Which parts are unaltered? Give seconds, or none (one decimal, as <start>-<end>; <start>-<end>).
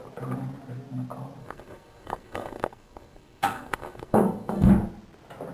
0.0-1.4; 4.7-5.5